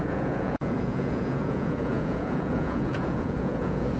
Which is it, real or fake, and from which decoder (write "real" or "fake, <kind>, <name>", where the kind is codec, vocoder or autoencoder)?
fake, vocoder, Vocos